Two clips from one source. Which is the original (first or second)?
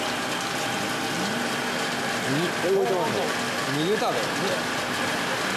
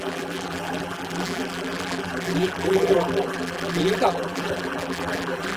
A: first